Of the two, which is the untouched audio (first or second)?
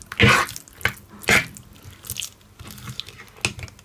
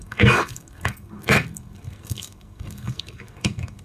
first